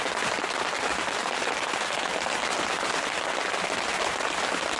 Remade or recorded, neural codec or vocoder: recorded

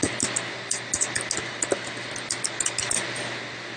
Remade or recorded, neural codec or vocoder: recorded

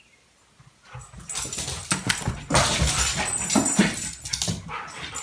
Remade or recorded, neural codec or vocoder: recorded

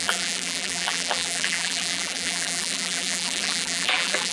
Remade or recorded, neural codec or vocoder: remade, vocoder, BigVGAN v2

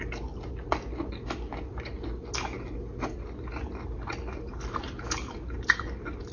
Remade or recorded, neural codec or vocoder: recorded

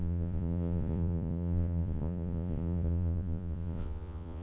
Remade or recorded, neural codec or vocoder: remade, vocoder, Vocos